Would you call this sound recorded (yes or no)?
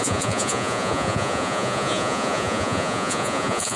no